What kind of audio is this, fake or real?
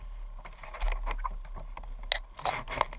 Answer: real